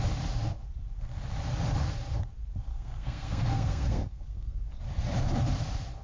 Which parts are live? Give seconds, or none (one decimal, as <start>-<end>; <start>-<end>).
0.0-2.7; 4.6-6.0